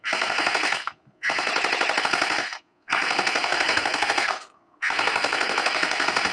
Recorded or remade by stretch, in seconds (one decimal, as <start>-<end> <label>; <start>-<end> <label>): 0.0-1.5 remade; 1.5-2.0 recorded; 2.0-6.3 remade